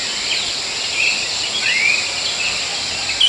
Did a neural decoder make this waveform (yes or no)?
no